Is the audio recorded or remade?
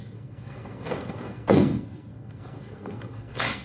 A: remade